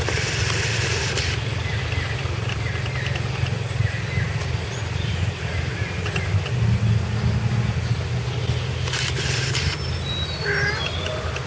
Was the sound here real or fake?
real